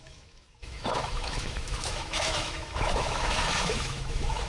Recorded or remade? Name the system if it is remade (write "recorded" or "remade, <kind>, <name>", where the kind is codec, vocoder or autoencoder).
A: remade, autoencoder, DAC-VAE